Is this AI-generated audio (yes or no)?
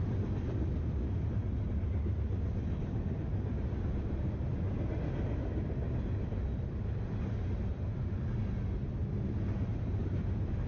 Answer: no